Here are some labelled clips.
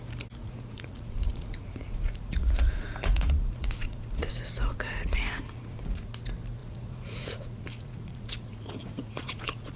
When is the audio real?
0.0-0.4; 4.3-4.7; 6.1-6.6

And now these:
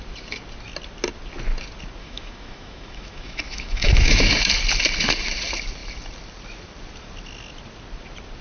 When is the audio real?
0.0-2.0; 4.3-8.4

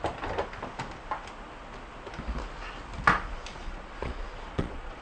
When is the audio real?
0.0-3.5